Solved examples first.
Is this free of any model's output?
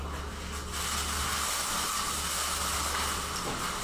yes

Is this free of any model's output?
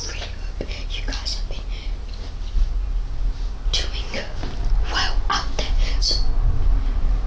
yes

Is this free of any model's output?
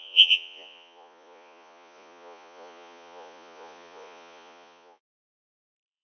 no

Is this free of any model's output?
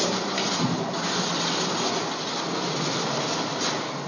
yes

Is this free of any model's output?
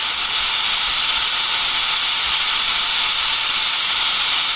yes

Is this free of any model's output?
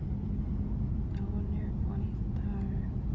yes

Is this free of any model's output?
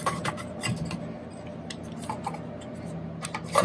yes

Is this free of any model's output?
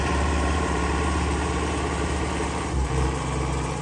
no